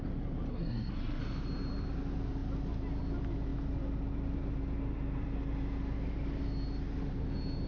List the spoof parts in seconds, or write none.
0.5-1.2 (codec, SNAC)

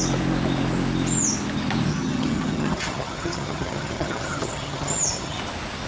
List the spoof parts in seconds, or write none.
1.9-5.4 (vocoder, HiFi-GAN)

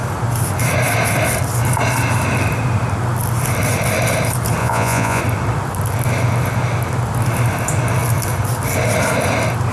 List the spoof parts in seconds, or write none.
4.6-5.2 (vocoder, Vocos)